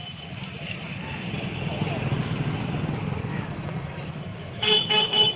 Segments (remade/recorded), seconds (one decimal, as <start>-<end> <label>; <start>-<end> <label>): 0.0-3.2 recorded; 3.2-5.4 remade